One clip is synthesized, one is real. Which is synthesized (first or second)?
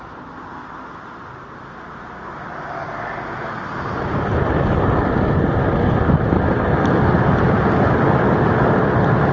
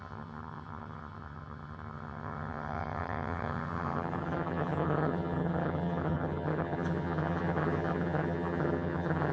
second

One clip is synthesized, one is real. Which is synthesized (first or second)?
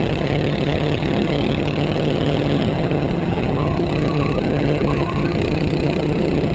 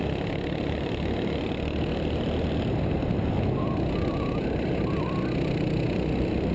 first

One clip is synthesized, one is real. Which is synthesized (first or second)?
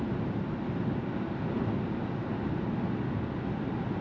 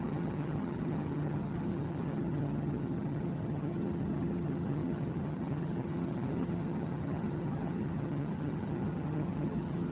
second